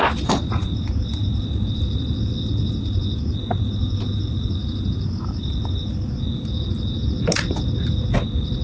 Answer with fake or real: real